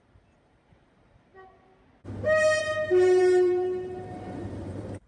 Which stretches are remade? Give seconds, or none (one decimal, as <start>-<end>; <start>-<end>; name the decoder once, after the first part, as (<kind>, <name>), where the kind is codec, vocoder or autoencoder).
0.0-1.3 (vocoder, BigVGAN v2); 2.6-5.1